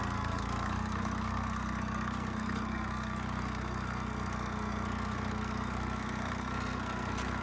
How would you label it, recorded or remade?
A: remade